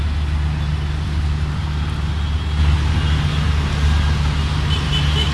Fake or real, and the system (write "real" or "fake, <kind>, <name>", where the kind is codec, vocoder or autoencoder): real